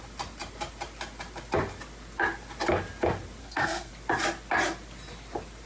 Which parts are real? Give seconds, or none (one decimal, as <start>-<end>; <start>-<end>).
0.0-3.4; 3.9-5.7